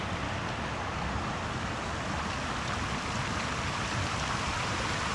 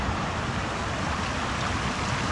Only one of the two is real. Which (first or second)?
first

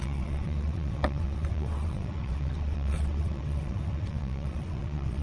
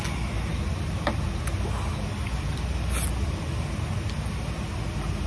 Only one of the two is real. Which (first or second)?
second